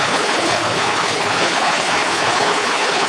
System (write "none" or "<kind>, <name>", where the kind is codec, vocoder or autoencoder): codec, HILCodec